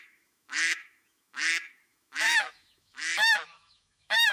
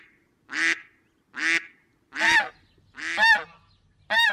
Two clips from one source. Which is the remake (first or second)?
first